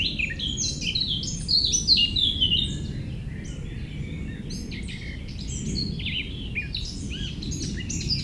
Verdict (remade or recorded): recorded